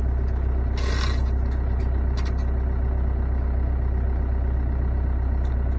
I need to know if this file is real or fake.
real